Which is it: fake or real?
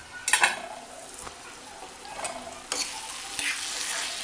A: real